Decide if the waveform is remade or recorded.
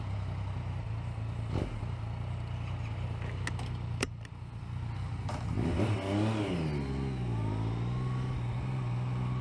recorded